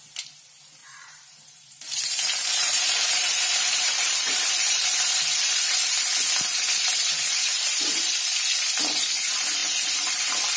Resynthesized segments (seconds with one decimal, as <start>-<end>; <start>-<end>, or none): 0.8-6.0; 6.9-8.0